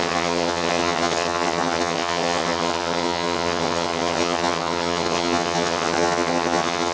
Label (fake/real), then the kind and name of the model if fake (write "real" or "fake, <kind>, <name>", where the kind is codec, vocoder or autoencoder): fake, vocoder, HiFi-GAN